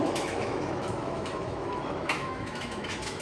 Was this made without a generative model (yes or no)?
no